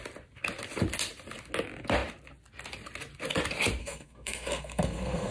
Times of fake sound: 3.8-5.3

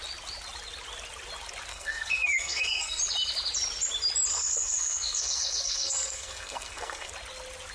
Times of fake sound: 1.7-3.0; 4.3-7.1

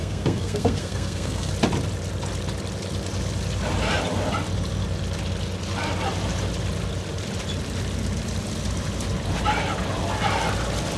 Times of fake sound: 0.0-1.5